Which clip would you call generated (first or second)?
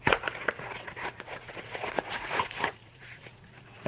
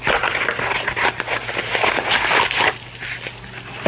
first